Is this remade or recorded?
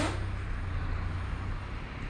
recorded